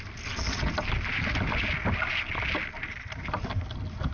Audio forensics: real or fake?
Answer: real